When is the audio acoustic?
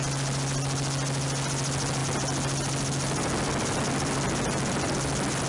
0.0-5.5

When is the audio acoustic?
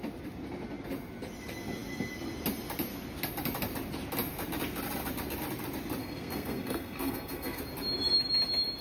0.0-6.0; 7.6-8.8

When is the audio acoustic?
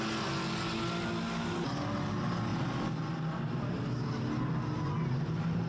0.0-2.5; 3.1-5.0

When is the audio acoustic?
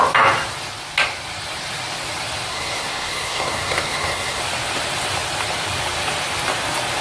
0.0-2.5; 4.4-7.0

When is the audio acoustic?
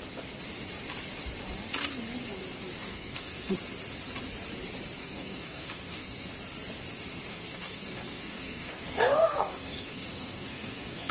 0.0-2.8; 3.5-5.0; 6.3-7.3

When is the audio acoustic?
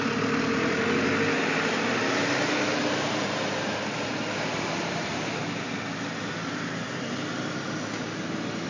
0.0-2.8; 5.1-8.7